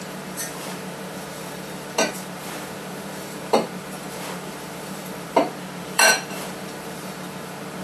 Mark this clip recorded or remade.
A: remade